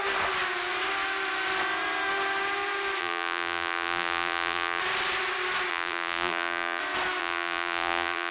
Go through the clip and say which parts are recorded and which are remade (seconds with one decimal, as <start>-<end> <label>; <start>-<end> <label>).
0.0-3.0 recorded; 3.0-4.8 remade; 4.8-5.7 recorded; 5.7-6.8 remade; 6.8-7.2 recorded; 7.2-8.3 remade